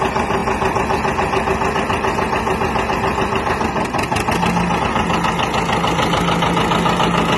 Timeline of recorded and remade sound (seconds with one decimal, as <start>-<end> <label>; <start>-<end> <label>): 0.0-7.4 recorded